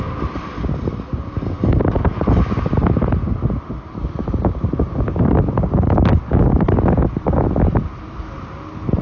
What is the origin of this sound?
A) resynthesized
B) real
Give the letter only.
B